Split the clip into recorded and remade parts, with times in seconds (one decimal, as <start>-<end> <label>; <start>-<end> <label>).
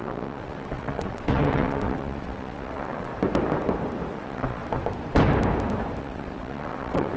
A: 0.0-3.1 remade; 3.1-4.1 recorded; 4.1-4.6 remade; 4.6-6.0 recorded; 6.0-7.2 remade